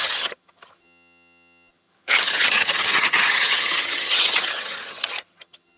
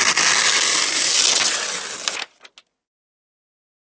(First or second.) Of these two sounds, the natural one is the second